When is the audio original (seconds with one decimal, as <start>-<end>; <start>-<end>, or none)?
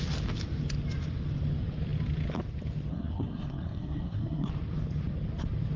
0.0-2.9; 4.5-5.8